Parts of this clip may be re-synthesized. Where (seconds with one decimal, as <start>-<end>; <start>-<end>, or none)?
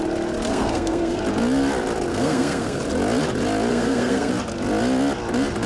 0.5-1.2; 2.1-2.8; 3.7-4.3